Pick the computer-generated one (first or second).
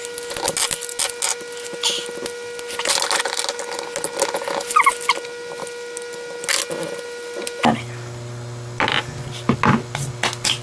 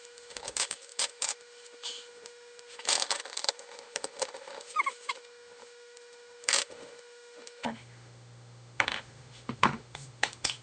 second